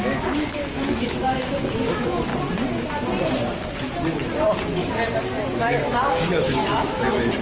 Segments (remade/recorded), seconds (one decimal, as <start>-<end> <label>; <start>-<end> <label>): 0.0-2.3 remade; 2.3-5.5 recorded; 5.5-7.4 remade